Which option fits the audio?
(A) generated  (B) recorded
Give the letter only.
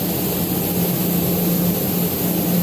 B